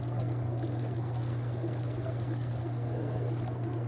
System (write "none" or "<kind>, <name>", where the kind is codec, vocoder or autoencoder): codec, SNAC